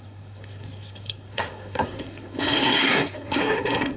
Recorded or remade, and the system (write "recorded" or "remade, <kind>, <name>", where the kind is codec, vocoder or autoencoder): remade, codec, SNAC